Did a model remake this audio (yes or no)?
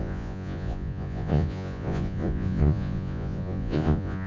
yes